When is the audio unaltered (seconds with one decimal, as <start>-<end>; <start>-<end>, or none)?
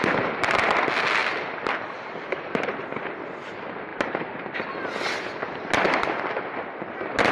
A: 0.0-1.2; 2.7-3.9; 4.7-7.3